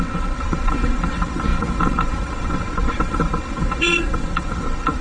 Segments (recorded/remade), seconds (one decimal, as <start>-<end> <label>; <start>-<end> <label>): 0.0-5.0 remade